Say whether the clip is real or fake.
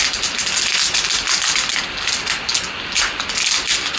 real